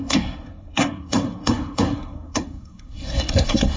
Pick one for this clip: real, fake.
fake